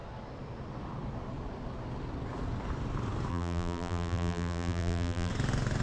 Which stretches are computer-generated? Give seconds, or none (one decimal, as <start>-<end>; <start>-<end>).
3.3-5.3